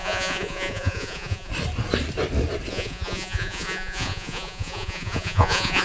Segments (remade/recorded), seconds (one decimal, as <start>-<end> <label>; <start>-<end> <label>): 0.0-1.5 remade; 1.5-2.7 recorded; 2.7-5.8 remade